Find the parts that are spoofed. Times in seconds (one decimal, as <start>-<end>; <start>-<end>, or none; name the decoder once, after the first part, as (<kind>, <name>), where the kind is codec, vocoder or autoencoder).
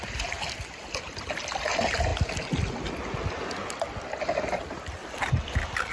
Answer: none